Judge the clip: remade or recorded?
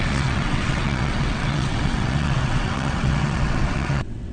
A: remade